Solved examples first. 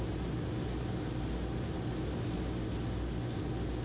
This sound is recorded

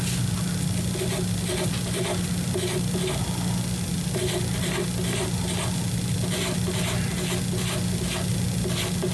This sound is recorded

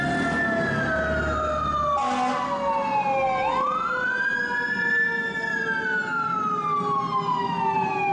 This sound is recorded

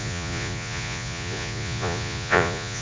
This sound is remade